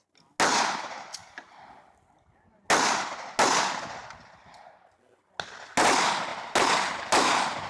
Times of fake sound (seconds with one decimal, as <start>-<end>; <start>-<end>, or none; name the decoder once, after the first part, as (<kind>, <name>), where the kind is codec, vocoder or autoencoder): none